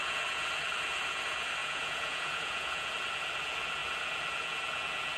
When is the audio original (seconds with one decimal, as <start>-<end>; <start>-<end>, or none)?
0.0-1.6; 2.9-5.2